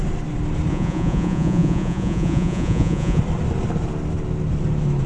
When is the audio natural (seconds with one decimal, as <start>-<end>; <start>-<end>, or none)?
0.0-0.7; 3.2-5.1